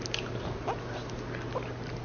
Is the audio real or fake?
real